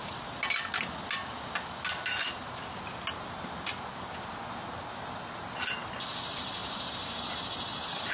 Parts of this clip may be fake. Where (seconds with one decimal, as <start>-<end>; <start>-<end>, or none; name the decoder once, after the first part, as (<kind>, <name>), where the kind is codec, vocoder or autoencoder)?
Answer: none